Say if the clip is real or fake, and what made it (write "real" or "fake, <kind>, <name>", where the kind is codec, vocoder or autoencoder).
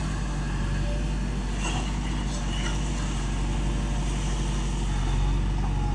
real